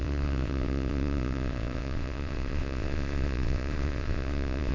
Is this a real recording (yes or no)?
no